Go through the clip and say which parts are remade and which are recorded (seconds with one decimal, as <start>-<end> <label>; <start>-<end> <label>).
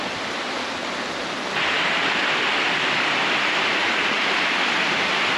0.0-5.4 recorded